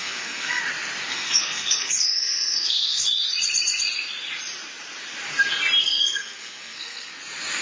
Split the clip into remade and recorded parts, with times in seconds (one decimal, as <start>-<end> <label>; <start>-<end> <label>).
0.0-0.6 remade; 0.6-1.1 recorded; 1.1-3.0 remade; 3.0-5.8 recorded; 5.8-7.1 remade; 7.1-7.6 recorded